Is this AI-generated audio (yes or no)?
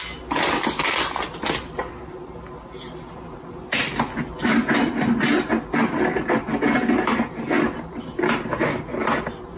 no